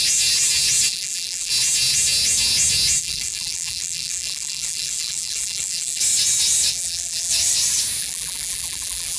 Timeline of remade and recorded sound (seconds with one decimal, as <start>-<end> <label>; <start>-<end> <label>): 0.0-0.9 recorded; 0.9-1.5 remade; 1.5-3.0 recorded; 3.0-6.0 remade; 6.0-6.7 recorded; 6.7-7.3 remade; 7.3-8.0 recorded; 8.0-9.2 remade